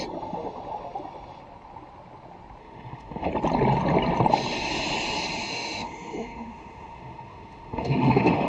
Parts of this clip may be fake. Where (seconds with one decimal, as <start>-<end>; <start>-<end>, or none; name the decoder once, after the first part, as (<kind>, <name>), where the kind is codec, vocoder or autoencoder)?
2.6-3.3 (autoencoder, DAC-VAE); 5.5-8.5